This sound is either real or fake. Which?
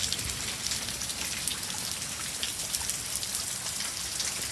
real